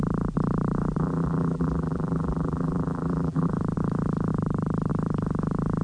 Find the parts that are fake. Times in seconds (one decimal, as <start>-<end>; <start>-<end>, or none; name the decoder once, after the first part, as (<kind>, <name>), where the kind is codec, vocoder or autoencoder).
1.0-3.5 (vocoder, BigVGAN v2)